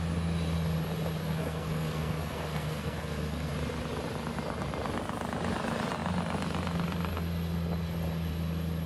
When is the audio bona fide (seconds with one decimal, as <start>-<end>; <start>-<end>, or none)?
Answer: 0.0-1.2; 3.5-8.9